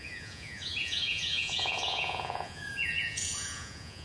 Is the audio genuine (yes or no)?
no